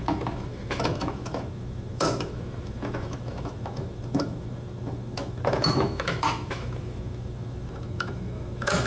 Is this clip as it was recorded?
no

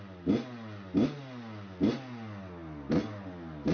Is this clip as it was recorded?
yes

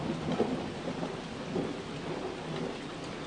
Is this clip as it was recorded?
yes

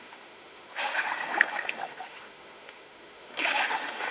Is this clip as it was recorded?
no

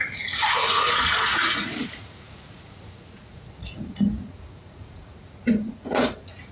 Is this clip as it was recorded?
no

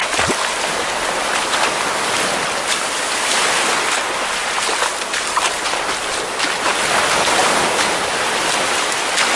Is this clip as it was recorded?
yes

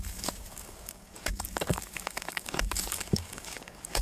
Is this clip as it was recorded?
no